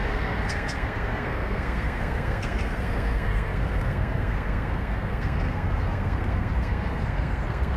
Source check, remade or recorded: remade